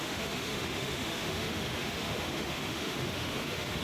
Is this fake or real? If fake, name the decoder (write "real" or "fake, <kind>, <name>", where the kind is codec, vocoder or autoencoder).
fake, autoencoder, DAC-VAE